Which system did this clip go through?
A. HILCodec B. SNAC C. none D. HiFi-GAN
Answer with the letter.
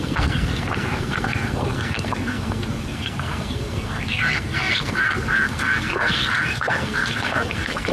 B